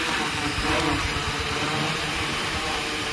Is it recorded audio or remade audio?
remade